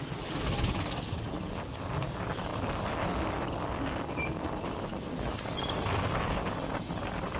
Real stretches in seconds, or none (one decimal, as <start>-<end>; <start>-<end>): 0.0-7.4